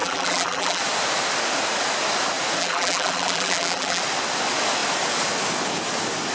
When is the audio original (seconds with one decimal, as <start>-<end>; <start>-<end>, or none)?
0.8-2.6; 4.0-6.3